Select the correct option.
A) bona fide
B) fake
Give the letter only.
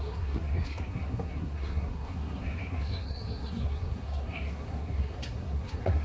B